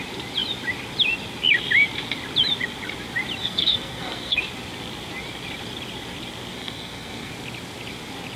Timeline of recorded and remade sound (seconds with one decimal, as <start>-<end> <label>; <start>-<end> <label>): 0.0-3.4 recorded; 3.4-4.4 remade; 4.4-6.5 recorded; 6.5-7.3 remade; 7.3-8.4 recorded